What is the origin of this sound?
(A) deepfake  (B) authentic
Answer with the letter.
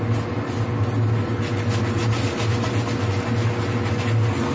B